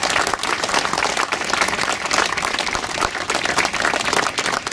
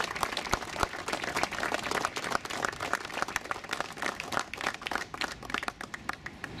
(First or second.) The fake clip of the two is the first